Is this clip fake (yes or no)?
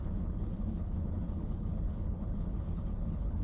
yes